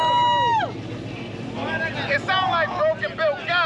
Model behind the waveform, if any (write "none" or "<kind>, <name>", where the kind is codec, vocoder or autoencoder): none